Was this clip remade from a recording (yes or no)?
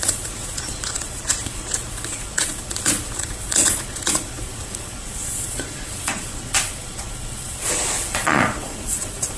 yes